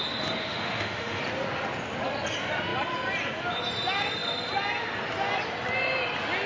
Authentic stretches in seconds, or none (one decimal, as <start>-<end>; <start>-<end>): 0.0-0.4; 1.2-6.5